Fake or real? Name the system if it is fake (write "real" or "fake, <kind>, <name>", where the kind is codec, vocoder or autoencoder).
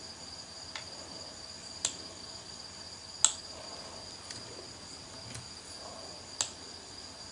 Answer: real